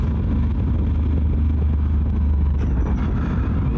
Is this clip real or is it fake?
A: real